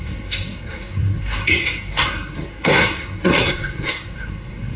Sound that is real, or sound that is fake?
fake